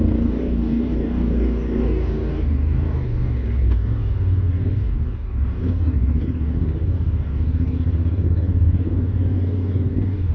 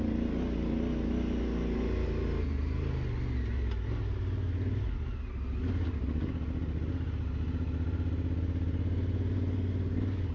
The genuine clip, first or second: second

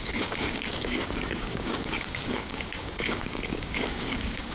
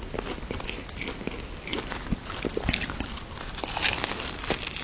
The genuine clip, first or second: second